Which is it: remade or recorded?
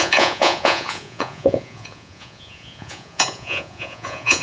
remade